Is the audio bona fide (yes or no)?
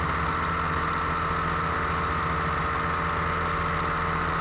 yes